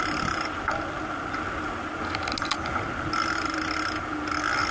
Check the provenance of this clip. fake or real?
real